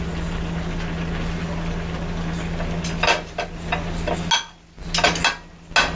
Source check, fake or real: real